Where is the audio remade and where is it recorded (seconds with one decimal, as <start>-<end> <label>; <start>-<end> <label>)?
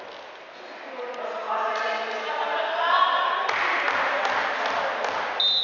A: 0.0-5.6 recorded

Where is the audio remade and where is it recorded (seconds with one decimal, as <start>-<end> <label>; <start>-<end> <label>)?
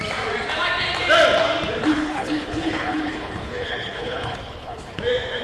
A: 0.0-1.8 recorded; 1.8-5.0 remade; 5.0-5.4 recorded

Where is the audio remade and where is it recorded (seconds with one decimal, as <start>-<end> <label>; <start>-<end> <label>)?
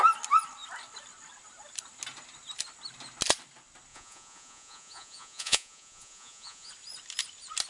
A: 0.0-3.9 recorded; 3.9-6.7 remade; 6.7-7.7 recorded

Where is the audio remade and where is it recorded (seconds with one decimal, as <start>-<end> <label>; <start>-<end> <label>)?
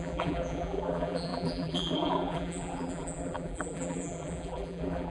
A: 0.0-5.1 remade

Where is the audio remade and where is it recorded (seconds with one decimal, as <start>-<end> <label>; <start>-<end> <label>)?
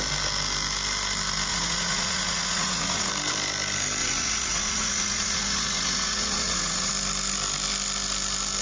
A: 0.0-1.5 recorded; 1.5-3.1 remade; 3.1-4.0 recorded; 4.0-6.9 remade; 6.9-8.6 recorded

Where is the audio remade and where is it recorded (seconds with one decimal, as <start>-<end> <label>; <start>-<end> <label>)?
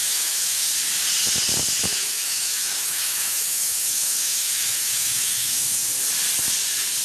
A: 0.0-0.7 remade; 0.7-1.9 recorded; 1.9-5.9 remade; 5.9-7.0 recorded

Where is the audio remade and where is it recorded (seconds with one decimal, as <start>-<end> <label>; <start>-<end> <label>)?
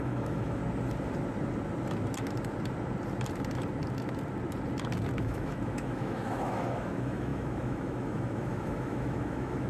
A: 0.0-0.6 remade; 0.6-5.2 recorded; 5.2-9.7 remade